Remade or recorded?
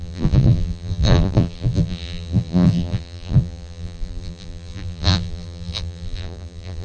remade